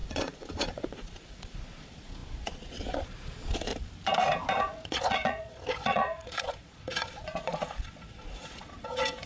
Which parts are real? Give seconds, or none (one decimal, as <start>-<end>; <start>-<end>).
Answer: 3.7-4.6